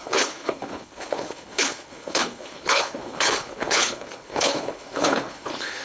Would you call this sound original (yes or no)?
no